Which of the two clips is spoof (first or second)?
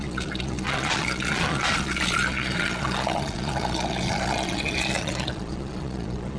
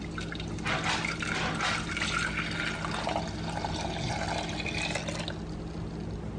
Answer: first